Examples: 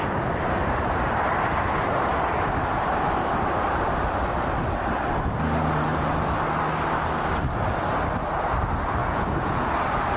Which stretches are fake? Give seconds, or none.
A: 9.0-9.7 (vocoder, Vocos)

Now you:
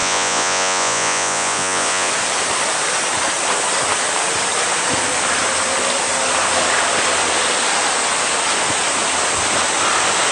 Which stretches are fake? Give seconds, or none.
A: 0.0-2.1 (vocoder, Vocos)

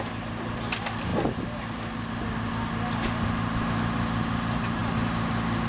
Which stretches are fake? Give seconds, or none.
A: none

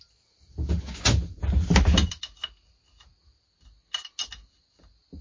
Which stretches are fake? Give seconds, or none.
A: none

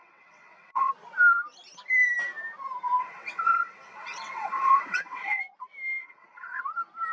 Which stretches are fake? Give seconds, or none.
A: 0.0-0.9 (vocoder, WaveNeXt); 3.0-5.4; 6.0-6.6

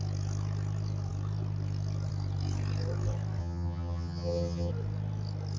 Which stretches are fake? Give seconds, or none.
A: 3.4-4.7 (vocoder, HiFi-GAN)

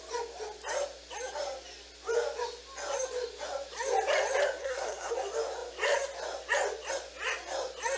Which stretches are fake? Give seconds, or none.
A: 4.6-5.1 (codec, SNAC)